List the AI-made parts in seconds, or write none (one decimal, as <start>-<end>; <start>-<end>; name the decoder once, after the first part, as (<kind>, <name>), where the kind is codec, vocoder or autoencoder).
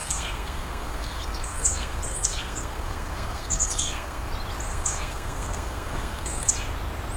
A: 0.0-4.3 (codec, SNAC); 4.7-6.5